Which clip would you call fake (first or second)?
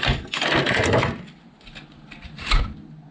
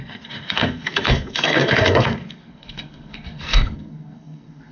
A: second